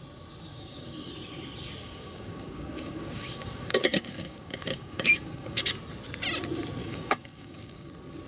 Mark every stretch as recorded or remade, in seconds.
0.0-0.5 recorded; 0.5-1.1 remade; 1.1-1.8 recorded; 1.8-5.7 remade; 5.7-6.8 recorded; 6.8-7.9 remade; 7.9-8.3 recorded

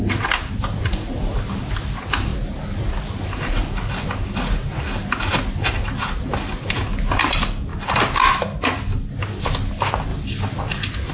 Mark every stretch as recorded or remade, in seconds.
0.0-11.1 recorded

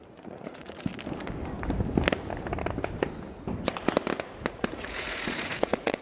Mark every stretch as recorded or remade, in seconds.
0.0-0.9 remade; 0.9-4.5 recorded; 4.5-6.0 remade

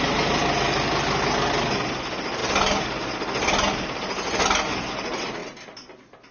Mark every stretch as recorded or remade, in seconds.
0.0-6.3 recorded

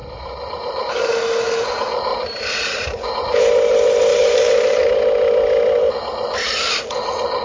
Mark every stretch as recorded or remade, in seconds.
0.0-0.9 remade; 0.9-2.1 recorded; 2.1-3.1 remade; 3.1-4.1 recorded; 4.1-4.9 remade; 4.9-7.4 recorded

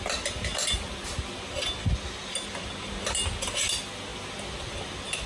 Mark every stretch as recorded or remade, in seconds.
0.0-5.3 recorded

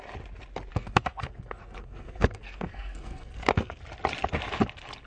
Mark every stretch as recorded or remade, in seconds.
0.0-0.7 recorded; 0.7-3.8 remade; 3.8-5.1 recorded

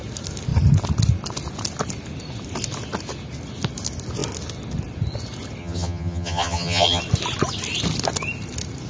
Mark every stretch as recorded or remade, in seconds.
0.0-5.6 recorded; 5.6-7.0 remade; 7.0-8.9 recorded